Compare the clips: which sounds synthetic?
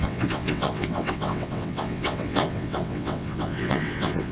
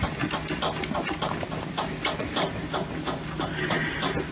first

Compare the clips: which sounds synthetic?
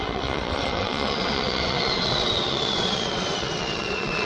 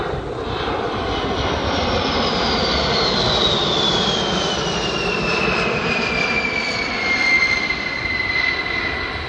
first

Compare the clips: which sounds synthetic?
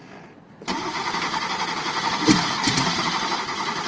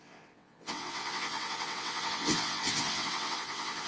second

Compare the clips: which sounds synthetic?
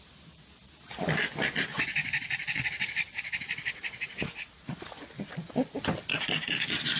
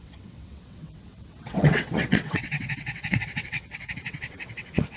second